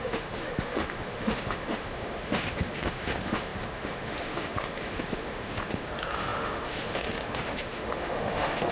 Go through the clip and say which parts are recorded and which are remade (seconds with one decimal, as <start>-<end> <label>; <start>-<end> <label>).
0.0-8.7 remade